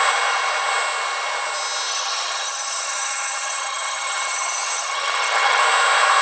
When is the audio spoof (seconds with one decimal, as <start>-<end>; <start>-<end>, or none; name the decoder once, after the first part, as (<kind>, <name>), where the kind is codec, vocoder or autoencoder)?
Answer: 1.9-5.6 (vocoder, HiFi-GAN)